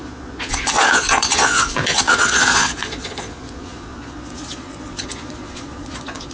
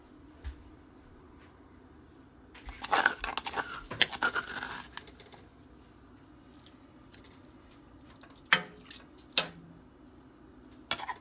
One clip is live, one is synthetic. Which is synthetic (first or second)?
first